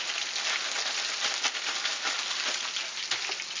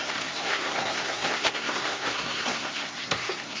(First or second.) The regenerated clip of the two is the second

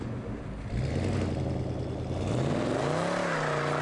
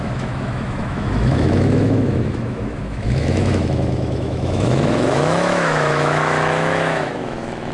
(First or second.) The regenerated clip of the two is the second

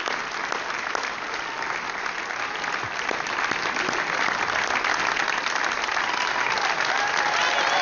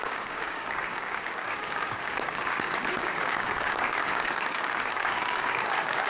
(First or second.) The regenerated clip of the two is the second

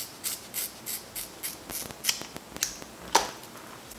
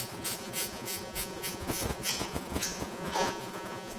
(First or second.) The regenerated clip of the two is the second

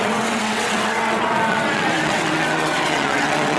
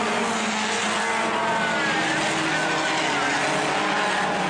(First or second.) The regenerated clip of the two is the first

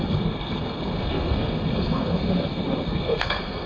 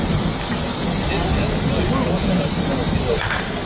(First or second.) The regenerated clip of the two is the first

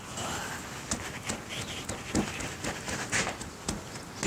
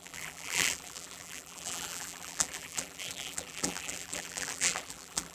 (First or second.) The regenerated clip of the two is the second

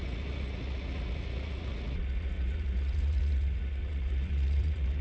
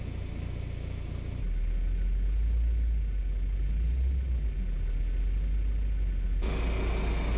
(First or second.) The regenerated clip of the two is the first